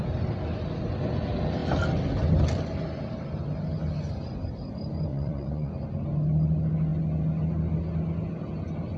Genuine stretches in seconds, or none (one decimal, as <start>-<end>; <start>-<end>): 0.0-5.1; 5.7-9.0